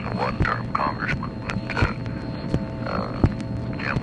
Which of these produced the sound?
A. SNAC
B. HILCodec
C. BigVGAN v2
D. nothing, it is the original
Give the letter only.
D